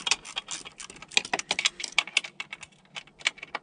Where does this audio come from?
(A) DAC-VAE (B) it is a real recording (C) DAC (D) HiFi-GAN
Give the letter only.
B